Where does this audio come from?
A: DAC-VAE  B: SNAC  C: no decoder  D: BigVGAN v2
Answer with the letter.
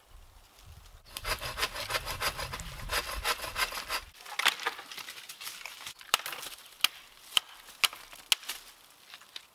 C